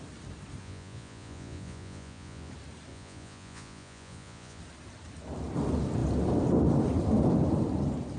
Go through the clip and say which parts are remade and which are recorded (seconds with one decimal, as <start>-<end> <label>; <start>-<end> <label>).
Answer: 0.0-0.6 recorded; 0.6-2.5 remade; 2.5-2.9 recorded; 2.9-4.6 remade; 4.6-8.2 recorded